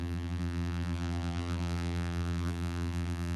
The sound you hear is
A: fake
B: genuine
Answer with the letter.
A